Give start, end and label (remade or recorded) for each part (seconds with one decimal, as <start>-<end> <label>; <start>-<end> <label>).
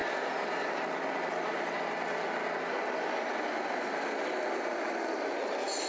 0.0-5.9 recorded